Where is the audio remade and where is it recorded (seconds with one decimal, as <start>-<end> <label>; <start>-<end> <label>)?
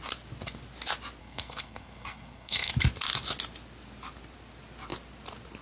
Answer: 0.0-1.2 recorded; 1.2-2.7 remade; 2.7-5.6 recorded